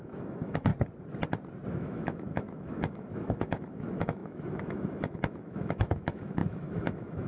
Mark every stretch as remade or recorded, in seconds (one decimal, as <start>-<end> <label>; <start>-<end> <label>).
0.0-0.7 remade; 0.7-1.7 recorded; 1.7-7.3 remade